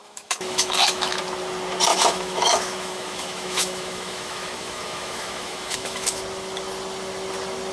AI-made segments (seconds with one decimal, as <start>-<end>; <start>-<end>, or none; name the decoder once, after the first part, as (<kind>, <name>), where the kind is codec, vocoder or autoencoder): 0.0-1.2 (autoencoder, DAC-VAE); 1.9-6.2